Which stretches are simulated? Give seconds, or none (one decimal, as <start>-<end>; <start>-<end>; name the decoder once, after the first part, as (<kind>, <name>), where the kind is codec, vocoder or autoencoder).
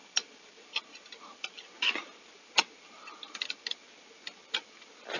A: none